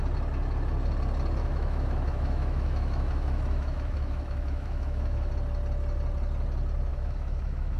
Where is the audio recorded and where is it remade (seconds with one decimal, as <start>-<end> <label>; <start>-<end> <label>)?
0.0-1.4 recorded; 1.4-5.3 remade; 5.3-6.9 recorded; 6.9-7.8 remade

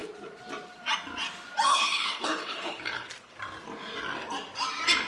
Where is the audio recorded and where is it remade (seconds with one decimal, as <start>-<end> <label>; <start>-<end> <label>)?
0.0-1.7 recorded; 1.7-3.1 remade; 3.1-5.1 recorded

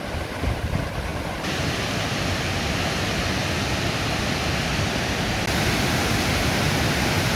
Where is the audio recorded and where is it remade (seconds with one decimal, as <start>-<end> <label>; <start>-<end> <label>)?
0.0-7.4 recorded

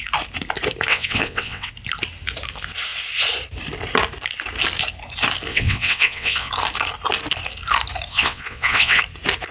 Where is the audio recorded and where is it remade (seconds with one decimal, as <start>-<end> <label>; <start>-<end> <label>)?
0.0-0.9 recorded; 0.9-1.7 remade; 1.7-5.5 recorded; 5.5-6.5 remade; 6.5-8.1 recorded; 8.1-9.0 remade; 9.0-9.5 recorded

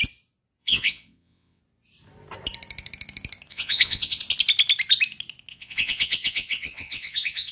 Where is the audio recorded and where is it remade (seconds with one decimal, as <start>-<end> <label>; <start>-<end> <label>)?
0.0-0.6 recorded; 0.6-1.6 remade; 1.6-3.5 recorded; 3.5-4.2 remade; 4.2-5.5 recorded; 5.5-7.5 remade

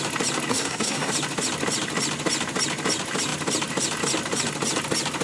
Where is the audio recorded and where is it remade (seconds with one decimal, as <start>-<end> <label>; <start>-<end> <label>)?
0.0-0.5 recorded; 0.5-1.1 remade; 1.1-5.2 recorded